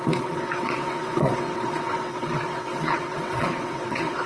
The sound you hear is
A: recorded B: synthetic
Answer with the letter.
B